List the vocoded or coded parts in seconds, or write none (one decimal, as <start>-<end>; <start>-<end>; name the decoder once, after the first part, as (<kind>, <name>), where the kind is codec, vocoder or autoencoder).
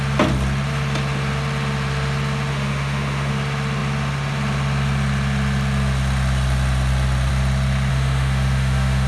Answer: 2.5-3.3 (autoencoder, DAC-VAE); 7.9-9.1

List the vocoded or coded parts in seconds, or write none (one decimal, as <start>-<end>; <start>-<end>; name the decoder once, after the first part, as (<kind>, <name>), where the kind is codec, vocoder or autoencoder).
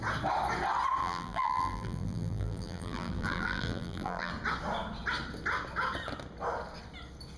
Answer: 1.0-4.3 (vocoder, BigVGAN v2)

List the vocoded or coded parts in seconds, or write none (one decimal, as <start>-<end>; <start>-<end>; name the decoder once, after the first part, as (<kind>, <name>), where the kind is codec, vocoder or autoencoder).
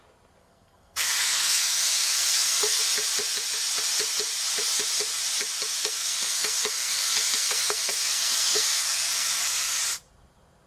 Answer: 0.4-2.8 (codec, SNAC); 5.8-9.8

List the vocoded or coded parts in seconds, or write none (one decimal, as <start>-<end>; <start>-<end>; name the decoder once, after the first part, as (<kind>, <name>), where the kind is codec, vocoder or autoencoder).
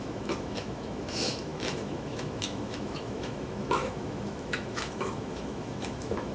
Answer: 0.0-6.3 (autoencoder, DAC-VAE)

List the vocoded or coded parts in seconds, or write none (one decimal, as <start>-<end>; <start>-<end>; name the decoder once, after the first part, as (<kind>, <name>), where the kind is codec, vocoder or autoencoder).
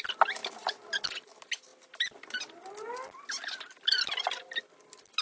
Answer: none